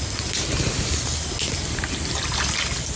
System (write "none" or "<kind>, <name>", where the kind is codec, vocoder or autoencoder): none